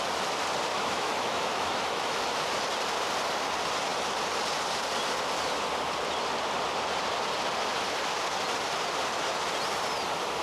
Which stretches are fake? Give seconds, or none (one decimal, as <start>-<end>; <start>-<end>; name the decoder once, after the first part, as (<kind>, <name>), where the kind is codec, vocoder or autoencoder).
0.7-2.3 (autoencoder, DAC-VAE)